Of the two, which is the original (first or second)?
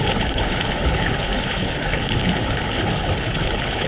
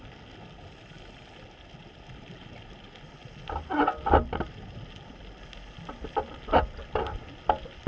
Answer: second